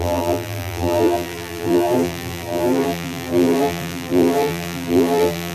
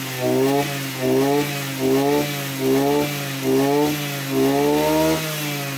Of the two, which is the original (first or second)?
second